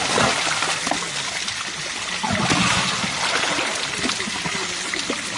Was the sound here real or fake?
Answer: real